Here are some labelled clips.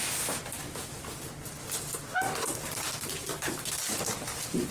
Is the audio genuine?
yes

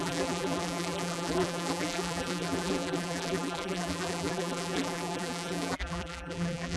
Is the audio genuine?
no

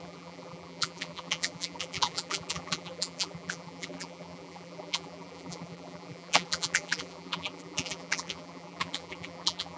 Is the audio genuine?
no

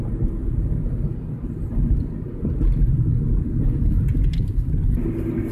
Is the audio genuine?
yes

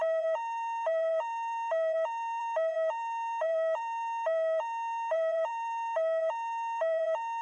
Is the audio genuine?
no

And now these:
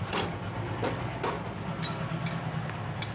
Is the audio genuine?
yes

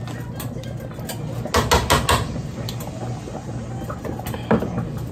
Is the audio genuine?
yes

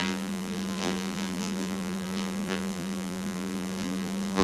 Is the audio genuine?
no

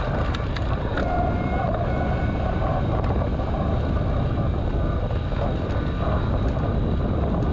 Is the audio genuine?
yes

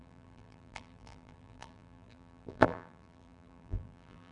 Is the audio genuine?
no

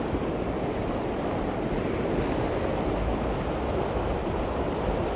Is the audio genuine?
yes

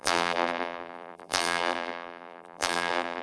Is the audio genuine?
no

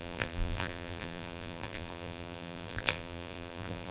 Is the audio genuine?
no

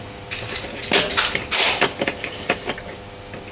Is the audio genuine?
yes